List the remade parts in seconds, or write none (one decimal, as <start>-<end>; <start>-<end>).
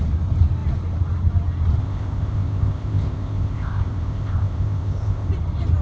1.8-5.3